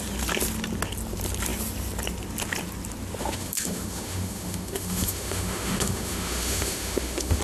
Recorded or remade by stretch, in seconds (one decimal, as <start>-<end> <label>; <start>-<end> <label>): 0.0-3.2 recorded; 3.2-7.4 remade